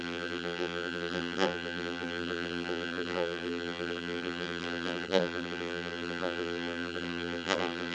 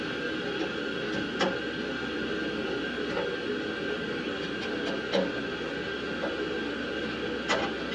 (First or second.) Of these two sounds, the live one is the second